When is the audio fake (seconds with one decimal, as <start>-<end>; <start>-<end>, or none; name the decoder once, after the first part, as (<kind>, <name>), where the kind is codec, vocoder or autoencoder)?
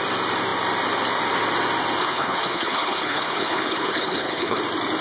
2.0-4.6 (codec, HILCodec)